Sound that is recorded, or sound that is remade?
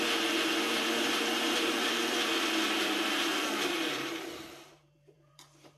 remade